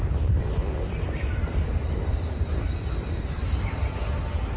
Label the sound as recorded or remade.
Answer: remade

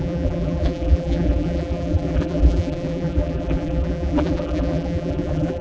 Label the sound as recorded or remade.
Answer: remade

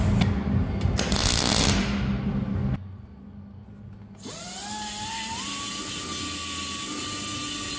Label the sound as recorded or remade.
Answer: recorded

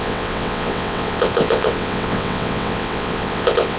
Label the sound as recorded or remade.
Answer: remade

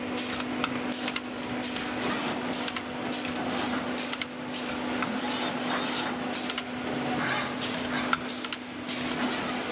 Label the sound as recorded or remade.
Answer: recorded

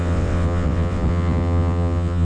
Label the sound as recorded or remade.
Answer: remade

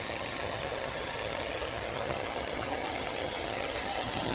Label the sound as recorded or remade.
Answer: remade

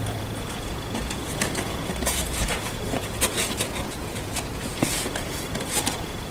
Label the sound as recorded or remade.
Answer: remade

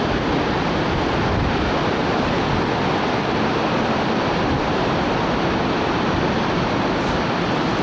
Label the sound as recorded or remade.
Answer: recorded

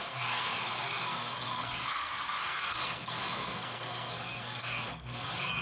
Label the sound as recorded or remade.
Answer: remade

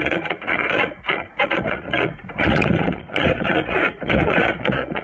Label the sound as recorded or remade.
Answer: remade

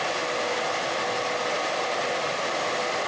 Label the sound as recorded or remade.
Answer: remade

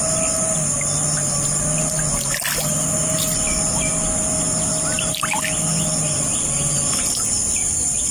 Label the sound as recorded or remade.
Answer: recorded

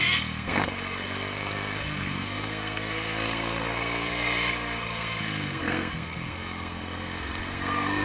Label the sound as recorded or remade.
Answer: remade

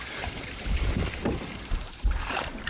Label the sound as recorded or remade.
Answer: remade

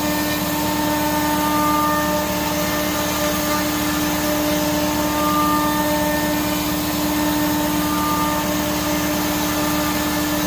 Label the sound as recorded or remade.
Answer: recorded